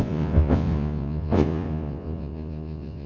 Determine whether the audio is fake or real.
fake